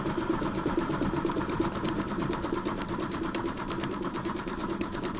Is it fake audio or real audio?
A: fake